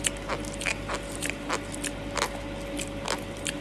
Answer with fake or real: real